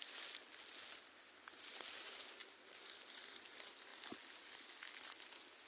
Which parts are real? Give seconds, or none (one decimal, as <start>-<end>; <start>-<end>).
0.0-2.4; 3.0-5.7